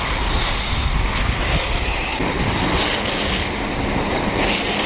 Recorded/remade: recorded